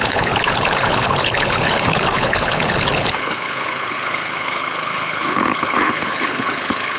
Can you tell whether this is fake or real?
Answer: fake